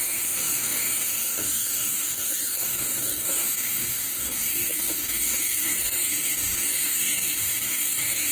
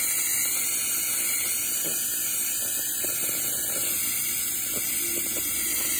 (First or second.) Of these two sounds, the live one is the second